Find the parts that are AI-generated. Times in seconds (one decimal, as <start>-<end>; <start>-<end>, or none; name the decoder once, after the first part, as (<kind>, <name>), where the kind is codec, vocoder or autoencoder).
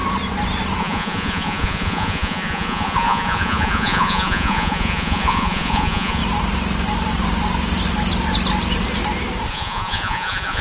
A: 0.8-6.2 (vocoder, Vocos); 9.5-10.6